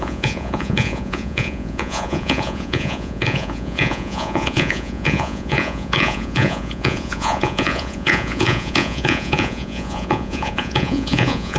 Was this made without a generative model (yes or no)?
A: no